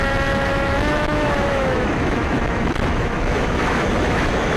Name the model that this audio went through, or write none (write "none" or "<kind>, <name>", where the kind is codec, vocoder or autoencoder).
autoencoder, DAC-VAE